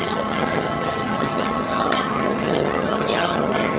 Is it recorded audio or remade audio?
remade